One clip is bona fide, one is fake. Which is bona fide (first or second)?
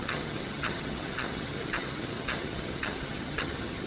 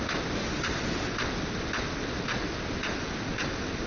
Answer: second